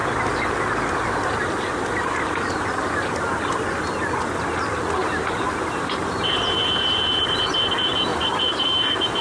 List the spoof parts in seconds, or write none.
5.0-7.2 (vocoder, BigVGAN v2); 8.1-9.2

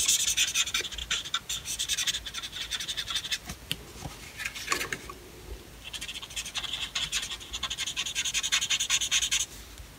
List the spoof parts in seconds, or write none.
1.0-2.1 (vocoder, BigVGAN v2)